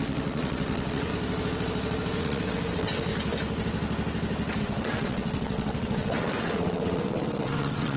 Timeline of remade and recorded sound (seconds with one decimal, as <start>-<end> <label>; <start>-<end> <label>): 0.0-1.1 remade; 1.1-2.2 recorded; 2.2-3.1 remade; 3.1-4.6 recorded; 4.6-8.0 remade